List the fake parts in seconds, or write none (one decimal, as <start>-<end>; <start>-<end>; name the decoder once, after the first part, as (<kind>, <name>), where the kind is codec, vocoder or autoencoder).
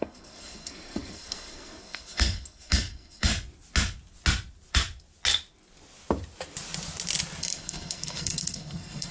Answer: 0.0-3.3 (codec, SNAC); 7.4-9.1